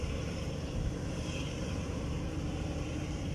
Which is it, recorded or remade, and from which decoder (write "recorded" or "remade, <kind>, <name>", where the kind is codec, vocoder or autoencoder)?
remade, vocoder, BigVGAN v2